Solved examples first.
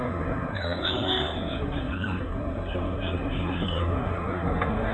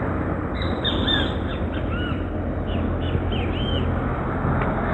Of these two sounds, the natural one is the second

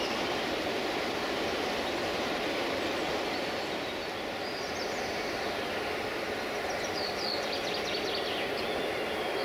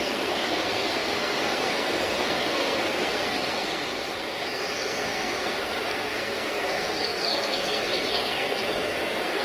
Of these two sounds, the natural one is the first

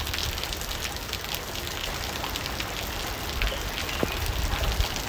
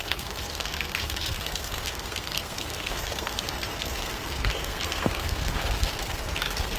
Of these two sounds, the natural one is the first